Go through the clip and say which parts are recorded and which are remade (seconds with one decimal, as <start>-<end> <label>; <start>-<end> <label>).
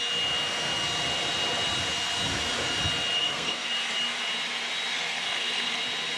0.0-3.2 recorded; 3.2-3.7 remade; 3.7-4.9 recorded; 4.9-5.8 remade; 5.8-6.2 recorded